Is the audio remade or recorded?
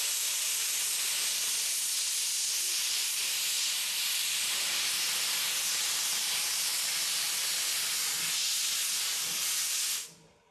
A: recorded